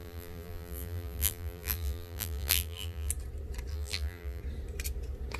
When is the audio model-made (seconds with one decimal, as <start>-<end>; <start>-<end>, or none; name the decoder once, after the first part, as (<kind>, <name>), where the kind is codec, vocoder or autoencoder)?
0.0-3.1 (vocoder, BigVGAN v2); 3.7-4.4